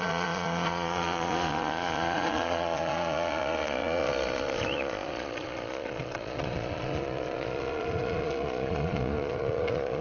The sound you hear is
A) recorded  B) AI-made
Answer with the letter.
B